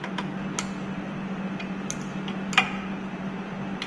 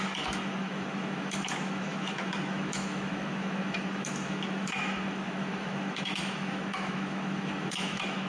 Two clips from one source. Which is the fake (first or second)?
second